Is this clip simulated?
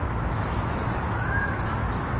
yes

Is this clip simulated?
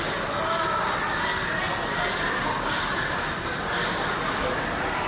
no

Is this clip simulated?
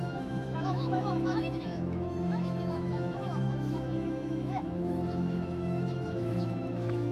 yes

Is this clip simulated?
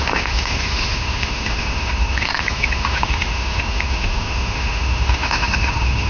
yes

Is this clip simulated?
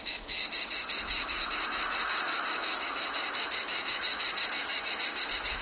yes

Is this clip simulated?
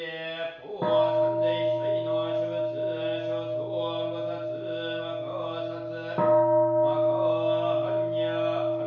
no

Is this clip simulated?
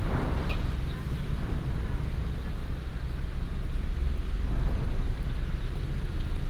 no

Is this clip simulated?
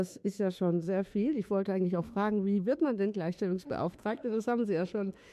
yes